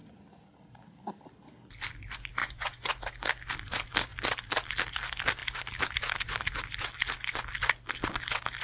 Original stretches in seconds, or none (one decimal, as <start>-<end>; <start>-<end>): 0.0-2.4; 3.0-8.6